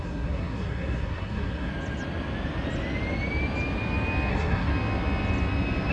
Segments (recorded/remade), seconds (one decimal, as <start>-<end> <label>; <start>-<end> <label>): 0.0-1.7 remade; 1.7-4.3 recorded; 4.3-4.7 remade; 4.7-5.9 recorded